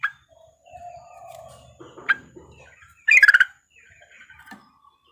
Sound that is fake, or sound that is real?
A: real